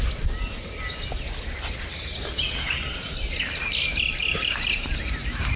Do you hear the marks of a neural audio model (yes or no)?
no